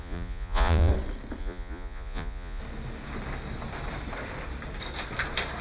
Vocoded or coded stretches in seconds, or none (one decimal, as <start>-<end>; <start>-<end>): 0.0-0.9; 1.4-2.6